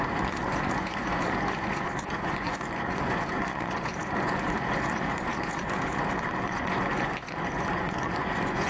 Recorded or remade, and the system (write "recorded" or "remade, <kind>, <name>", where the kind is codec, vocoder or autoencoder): remade, vocoder, Vocos